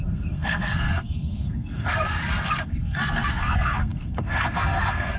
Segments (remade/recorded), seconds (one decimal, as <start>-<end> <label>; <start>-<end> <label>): 0.0-5.2 remade